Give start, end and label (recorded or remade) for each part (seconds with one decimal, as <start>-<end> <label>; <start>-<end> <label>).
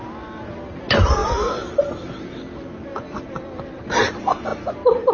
0.0-5.1 recorded